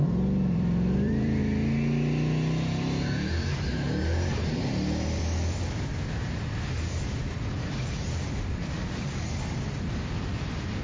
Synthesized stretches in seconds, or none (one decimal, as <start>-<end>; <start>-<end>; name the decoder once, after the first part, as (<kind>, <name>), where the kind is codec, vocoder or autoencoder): 0.0-1.4 (vocoder, BigVGAN v2); 4.5-10.8